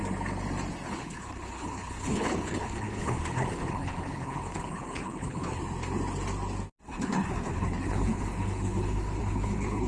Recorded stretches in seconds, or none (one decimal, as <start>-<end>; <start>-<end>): 0.0-0.9; 5.6-6.9